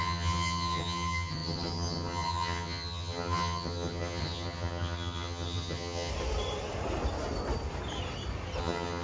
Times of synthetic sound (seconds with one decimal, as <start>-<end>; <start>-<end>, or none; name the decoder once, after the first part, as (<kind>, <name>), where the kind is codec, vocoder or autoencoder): 0.0-6.1 (vocoder, HiFi-GAN); 8.6-9.0

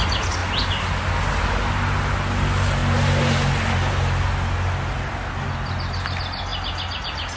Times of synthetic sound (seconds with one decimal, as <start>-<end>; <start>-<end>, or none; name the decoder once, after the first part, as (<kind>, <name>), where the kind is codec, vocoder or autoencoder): none

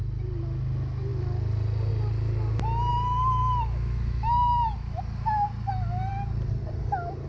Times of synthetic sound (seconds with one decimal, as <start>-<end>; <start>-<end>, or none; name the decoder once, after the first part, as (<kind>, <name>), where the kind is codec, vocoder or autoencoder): 2.9-5.0 (autoencoder, DAC-VAE)